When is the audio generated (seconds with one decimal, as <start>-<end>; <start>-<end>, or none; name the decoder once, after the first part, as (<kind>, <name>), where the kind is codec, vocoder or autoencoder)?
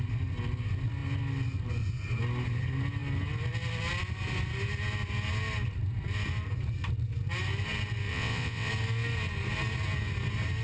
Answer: 8.1-8.7 (vocoder, WaveNeXt)